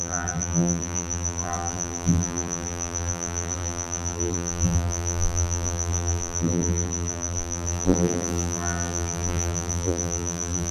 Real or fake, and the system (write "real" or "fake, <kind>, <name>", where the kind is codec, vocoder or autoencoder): fake, vocoder, BigVGAN v2